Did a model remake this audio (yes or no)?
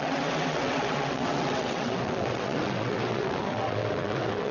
yes